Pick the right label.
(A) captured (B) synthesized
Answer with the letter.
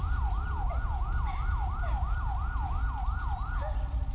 A